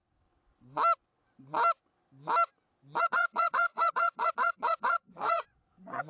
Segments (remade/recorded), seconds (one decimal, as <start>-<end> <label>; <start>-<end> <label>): 0.0-3.0 recorded; 3.0-6.1 remade